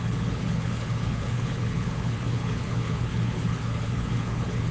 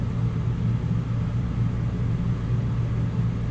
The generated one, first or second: first